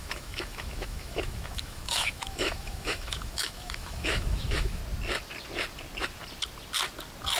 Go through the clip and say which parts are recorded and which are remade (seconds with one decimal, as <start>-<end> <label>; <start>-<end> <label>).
0.0-4.8 remade; 4.8-7.4 recorded

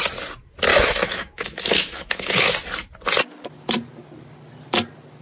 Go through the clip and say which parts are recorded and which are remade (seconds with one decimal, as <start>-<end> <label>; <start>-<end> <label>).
0.0-0.7 recorded; 0.7-2.5 remade; 2.5-5.2 recorded